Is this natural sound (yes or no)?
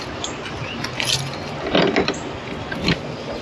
yes